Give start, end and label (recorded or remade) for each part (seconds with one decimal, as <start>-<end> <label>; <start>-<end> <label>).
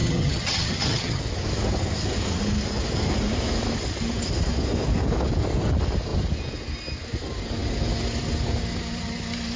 0.0-1.2 remade; 1.2-9.6 recorded